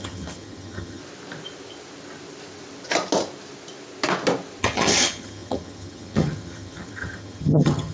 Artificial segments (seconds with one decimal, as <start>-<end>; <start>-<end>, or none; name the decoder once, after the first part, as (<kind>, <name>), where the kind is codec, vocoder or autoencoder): 0.0-1.0 (vocoder, HiFi-GAN); 4.6-7.9

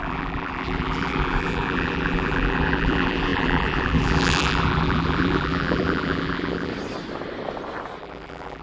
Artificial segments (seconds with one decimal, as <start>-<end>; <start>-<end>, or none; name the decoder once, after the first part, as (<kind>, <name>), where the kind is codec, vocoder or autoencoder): 0.0-6.7 (vocoder, BigVGAN v2); 8.0-8.6

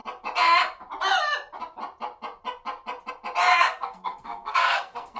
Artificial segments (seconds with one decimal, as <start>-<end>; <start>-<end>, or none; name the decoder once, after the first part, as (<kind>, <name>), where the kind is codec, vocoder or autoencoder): 3.5-5.2 (codec, SNAC)

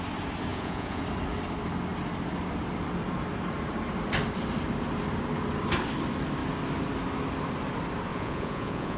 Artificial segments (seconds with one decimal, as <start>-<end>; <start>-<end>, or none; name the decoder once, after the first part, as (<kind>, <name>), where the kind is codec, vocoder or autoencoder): 0.5-1.0 (vocoder, Vocos); 8.1-9.0

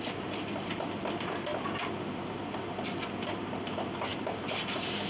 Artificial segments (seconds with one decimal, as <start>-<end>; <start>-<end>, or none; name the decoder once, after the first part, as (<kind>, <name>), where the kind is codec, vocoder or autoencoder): none

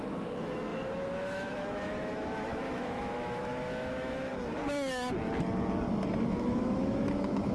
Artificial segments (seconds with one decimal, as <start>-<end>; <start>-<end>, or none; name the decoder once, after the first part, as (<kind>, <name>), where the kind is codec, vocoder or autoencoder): 0.0-4.3 (autoencoder, DAC-VAE); 6.3-7.5

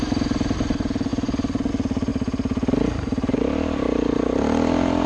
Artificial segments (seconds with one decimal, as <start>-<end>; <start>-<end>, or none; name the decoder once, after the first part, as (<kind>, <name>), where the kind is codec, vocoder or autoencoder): none

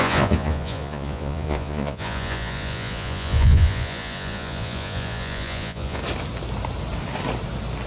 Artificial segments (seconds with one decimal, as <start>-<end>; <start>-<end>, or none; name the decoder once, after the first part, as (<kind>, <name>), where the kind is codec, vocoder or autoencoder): 0.0-6.0 (vocoder, Vocos)